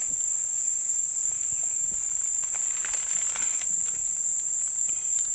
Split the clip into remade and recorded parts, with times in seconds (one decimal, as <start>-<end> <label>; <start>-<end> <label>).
0.0-0.5 recorded; 0.5-1.6 remade; 1.6-5.3 recorded